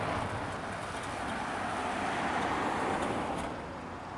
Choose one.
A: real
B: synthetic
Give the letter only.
A